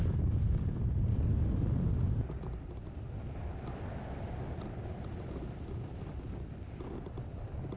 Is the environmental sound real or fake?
real